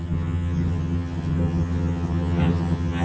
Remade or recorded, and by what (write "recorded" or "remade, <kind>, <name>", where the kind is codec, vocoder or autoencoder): remade, vocoder, HiFi-GAN